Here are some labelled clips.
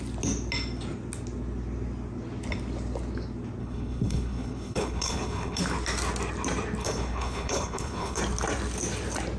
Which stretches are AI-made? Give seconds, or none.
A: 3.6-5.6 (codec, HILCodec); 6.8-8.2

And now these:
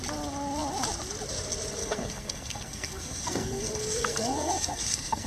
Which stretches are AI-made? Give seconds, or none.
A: 1.8-5.3 (codec, SNAC)

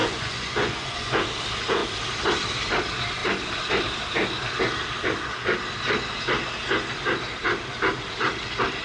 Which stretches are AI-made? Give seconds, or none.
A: 0.0-1.1 (vocoder, Vocos)

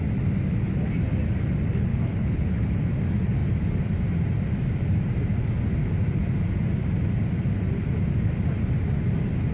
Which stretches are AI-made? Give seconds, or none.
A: 1.9-2.7 (codec, HILCodec)

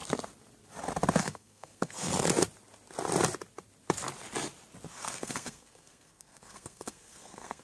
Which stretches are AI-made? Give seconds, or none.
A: 1.2-2.1 (codec, SNAC); 4.9-7.6

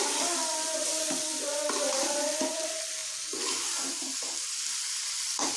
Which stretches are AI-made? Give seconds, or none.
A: 0.0-1.3 (vocoder, BigVGAN v2); 1.9-3.0; 3.9-5.6